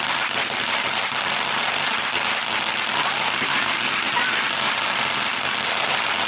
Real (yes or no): yes